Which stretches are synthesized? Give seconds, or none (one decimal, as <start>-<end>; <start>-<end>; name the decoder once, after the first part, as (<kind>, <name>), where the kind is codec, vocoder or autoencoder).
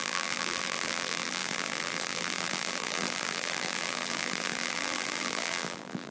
0.0-6.1 (vocoder, BigVGAN v2)